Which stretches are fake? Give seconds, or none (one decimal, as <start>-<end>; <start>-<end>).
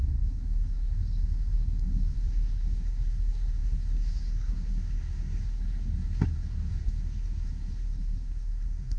0.0-9.0